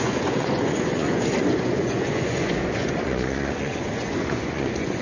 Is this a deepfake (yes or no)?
yes